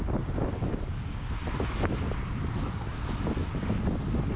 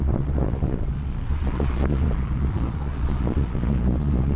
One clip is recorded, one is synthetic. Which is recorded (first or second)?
first